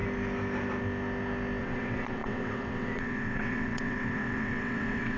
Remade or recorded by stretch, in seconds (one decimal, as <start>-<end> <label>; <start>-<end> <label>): 0.0-1.6 recorded; 1.6-5.2 remade